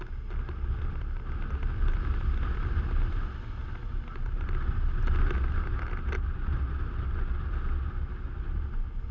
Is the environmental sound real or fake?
real